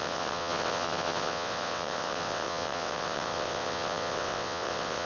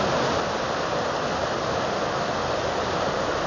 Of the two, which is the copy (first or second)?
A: first